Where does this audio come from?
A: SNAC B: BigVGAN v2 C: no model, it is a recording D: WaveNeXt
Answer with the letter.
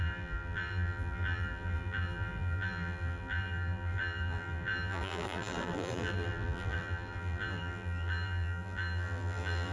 B